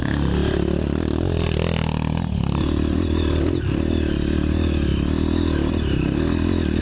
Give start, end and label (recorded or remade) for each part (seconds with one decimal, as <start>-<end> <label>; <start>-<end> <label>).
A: 0.0-6.8 recorded